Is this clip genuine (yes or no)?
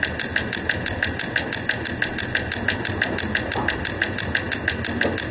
yes